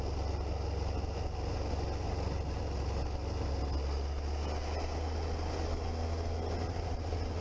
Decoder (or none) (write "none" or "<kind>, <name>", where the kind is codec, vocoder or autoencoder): none